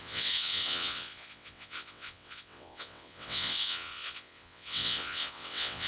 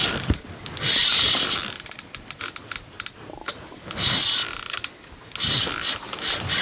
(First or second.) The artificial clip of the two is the first